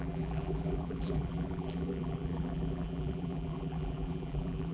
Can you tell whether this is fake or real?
fake